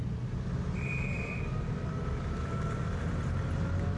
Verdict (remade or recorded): recorded